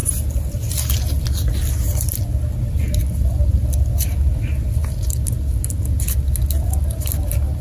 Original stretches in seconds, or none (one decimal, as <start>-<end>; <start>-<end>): 0.0-7.6